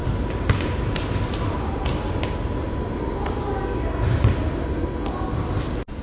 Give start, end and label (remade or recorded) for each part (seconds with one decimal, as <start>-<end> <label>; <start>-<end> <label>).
0.0-3.6 remade; 3.6-6.0 recorded